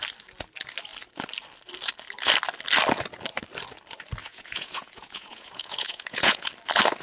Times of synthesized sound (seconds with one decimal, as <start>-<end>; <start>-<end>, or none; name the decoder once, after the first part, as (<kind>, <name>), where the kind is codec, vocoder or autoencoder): 4.2-6.5 (vocoder, Vocos)